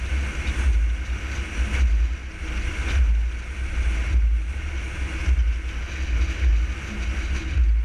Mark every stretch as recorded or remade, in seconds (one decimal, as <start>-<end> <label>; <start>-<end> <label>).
0.0-7.8 recorded